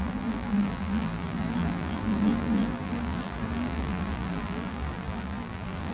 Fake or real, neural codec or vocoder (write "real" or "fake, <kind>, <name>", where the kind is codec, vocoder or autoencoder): fake, vocoder, BigVGAN v2